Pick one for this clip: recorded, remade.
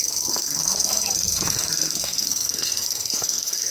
remade